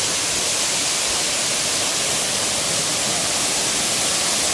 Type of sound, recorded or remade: recorded